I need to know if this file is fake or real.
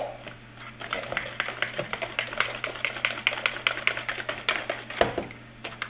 real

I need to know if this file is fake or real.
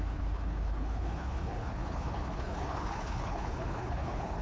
fake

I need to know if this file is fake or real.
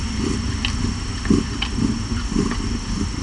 real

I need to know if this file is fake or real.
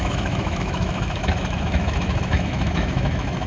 fake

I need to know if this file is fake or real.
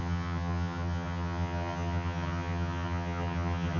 fake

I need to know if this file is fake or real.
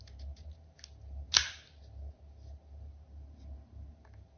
real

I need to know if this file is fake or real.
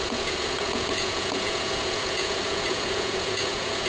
fake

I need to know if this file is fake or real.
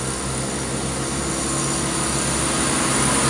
real